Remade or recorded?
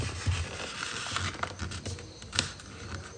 recorded